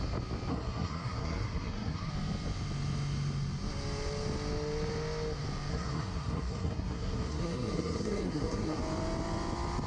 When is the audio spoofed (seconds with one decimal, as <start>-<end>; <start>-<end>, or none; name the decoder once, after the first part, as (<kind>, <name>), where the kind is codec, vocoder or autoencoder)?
0.5-2.1 (codec, SNAC); 5.7-8.8